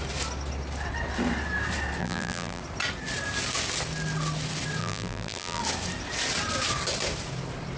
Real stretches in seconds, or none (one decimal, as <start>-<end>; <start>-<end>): 0.0-2.0; 2.6-4.8; 5.6-7.8